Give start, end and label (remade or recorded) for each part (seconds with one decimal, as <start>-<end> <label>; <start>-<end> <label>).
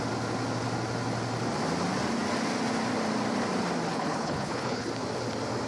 0.0-3.9 recorded; 3.9-4.9 remade; 4.9-5.7 recorded